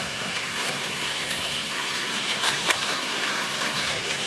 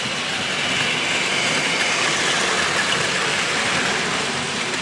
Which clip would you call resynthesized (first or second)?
first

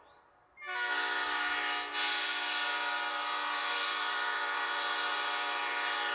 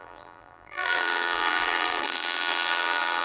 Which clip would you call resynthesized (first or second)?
second